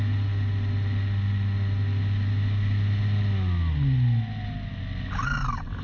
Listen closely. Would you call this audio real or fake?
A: real